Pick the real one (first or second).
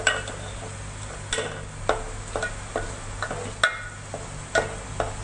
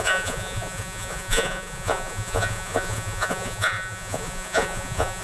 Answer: first